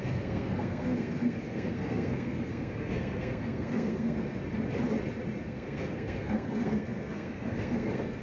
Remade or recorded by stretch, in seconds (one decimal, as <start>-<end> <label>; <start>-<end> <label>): 0.0-4.4 remade; 4.4-5.4 recorded; 5.4-8.2 remade